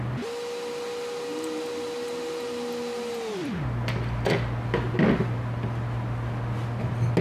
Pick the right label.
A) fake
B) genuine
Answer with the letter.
B